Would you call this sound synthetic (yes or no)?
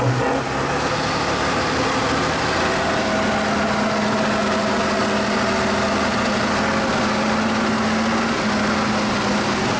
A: no